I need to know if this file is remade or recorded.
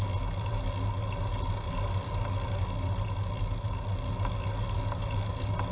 recorded